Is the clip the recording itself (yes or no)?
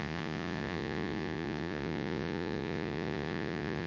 no